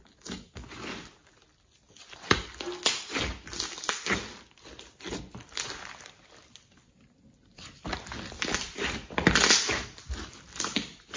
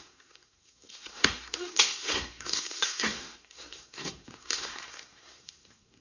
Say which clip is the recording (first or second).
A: first